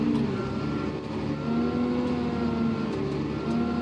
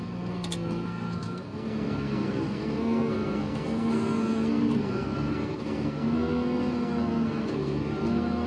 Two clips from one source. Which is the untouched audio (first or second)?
first